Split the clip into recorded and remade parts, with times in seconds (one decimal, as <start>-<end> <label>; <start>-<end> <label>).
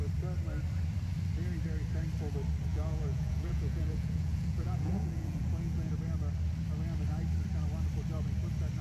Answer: 0.0-2.7 recorded; 2.7-5.9 remade; 5.9-8.8 recorded